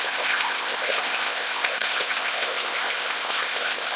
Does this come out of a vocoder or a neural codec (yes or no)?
yes